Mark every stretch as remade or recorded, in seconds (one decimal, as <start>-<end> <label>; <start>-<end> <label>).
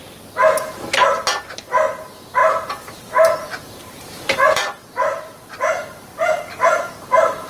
0.0-2.4 recorded; 2.4-6.9 remade; 6.9-7.5 recorded